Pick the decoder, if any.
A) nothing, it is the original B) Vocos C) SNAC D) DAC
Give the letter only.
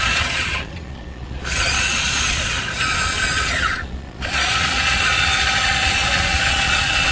B